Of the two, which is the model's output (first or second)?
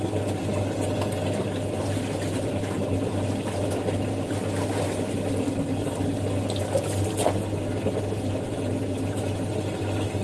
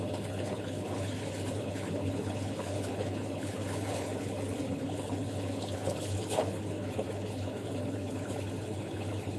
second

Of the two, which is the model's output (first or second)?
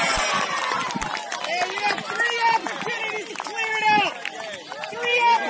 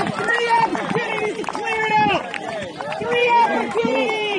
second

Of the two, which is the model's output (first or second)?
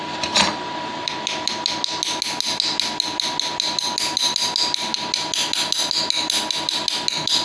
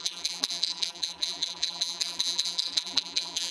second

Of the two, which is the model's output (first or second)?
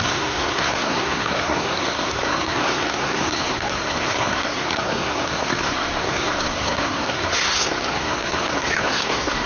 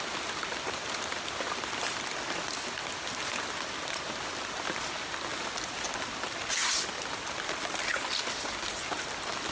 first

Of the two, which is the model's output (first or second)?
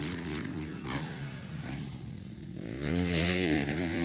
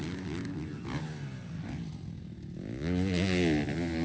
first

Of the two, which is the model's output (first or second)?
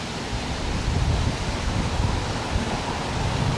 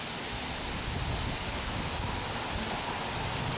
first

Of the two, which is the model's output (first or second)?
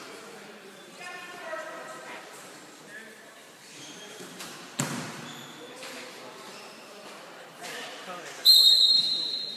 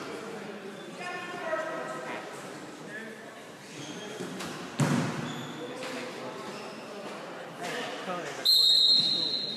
first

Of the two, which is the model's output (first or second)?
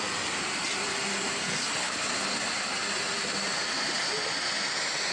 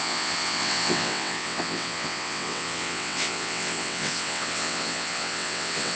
second